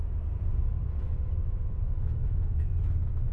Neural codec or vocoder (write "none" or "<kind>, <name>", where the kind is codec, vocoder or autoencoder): vocoder, Vocos